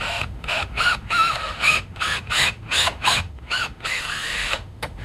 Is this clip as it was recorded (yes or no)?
no